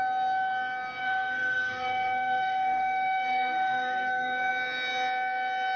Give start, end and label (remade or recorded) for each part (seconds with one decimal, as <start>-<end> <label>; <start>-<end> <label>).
0.0-1.0 recorded; 1.0-4.5 remade; 4.5-5.8 recorded